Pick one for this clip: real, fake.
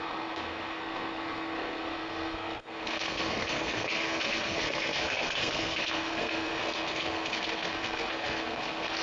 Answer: fake